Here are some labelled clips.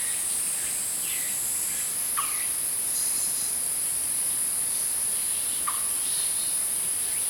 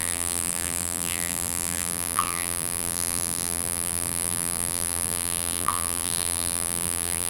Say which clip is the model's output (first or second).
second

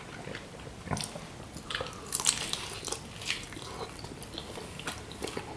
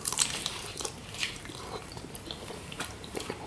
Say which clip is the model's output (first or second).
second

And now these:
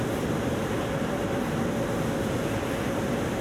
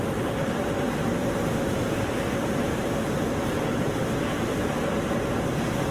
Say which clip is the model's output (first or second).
second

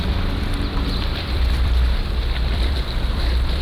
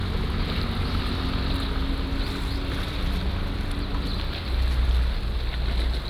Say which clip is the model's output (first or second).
first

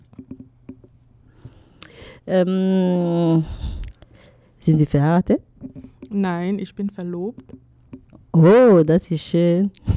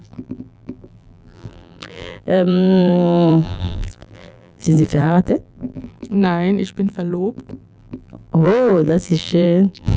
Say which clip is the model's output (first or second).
second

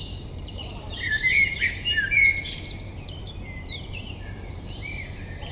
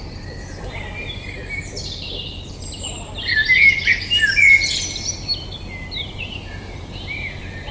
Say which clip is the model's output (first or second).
first